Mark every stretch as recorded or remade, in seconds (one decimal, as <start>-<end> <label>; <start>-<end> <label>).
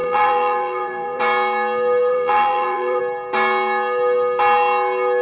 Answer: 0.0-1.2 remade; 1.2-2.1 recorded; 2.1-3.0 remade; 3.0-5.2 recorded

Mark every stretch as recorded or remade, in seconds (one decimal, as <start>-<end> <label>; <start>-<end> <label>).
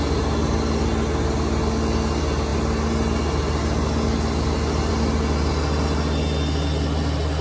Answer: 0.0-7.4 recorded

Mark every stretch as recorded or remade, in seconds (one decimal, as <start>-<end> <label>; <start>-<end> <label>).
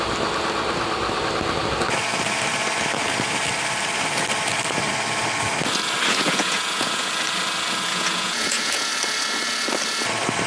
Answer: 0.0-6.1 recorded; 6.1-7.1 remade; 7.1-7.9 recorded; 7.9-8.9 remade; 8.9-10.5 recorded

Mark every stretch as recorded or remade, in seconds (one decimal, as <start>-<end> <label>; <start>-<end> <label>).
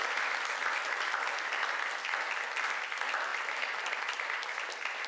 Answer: 0.0-5.1 recorded